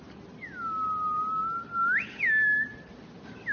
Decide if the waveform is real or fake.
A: real